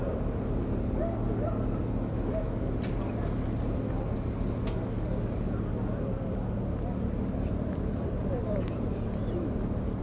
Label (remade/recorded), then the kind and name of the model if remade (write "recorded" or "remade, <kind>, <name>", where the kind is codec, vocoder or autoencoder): recorded